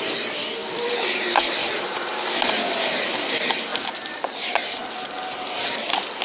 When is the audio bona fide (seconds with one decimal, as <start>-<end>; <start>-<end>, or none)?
0.0-0.6; 1.5-3.7; 4.3-6.2